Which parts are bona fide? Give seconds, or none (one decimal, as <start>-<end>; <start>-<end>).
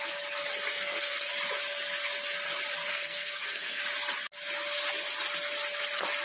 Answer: 0.0-0.7; 1.3-2.9; 3.8-6.2